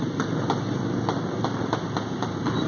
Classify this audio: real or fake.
real